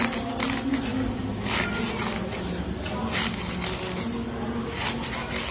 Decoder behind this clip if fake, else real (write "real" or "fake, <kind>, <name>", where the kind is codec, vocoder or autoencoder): real